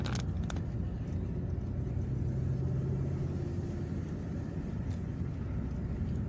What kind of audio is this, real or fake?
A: real